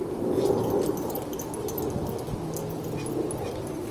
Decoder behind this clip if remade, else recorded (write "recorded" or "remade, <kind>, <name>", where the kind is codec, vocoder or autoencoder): recorded